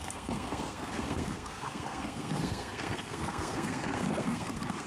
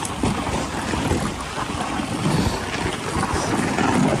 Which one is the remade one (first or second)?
first